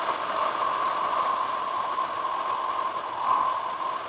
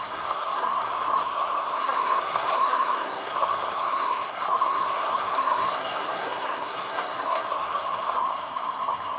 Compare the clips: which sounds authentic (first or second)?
first